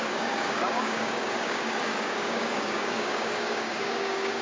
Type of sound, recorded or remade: remade